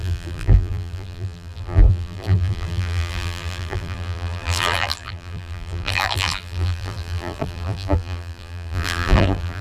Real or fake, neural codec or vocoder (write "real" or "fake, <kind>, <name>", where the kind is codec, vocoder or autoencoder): fake, vocoder, BigVGAN v2